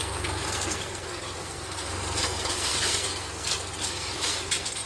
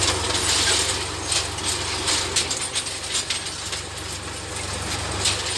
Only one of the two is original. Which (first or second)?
second